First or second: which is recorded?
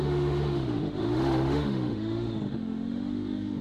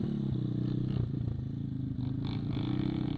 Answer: second